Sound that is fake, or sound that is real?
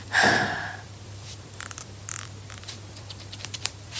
fake